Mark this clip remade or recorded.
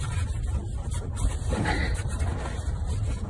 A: recorded